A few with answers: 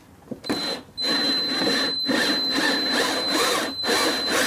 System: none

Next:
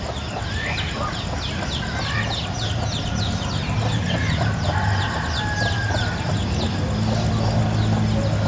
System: none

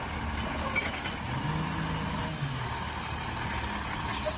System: none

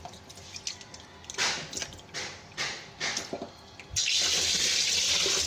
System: none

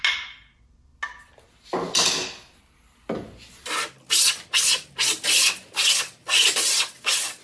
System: none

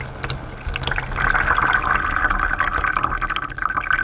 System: none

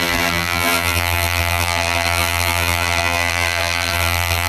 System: vocoder, BigVGAN v2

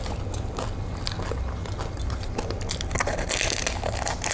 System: none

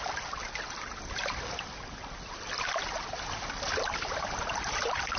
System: none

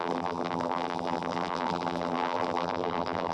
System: vocoder, BigVGAN v2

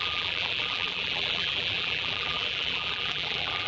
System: vocoder, BigVGAN v2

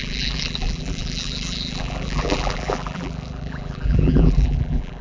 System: vocoder, BigVGAN v2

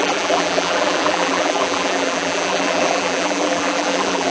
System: vocoder, BigVGAN v2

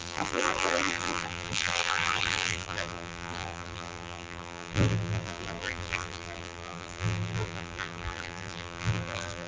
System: vocoder, BigVGAN v2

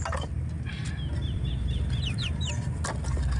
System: vocoder, BigVGAN v2